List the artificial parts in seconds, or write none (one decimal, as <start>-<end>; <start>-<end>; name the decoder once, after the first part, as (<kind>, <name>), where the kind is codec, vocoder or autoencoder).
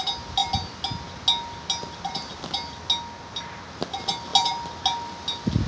none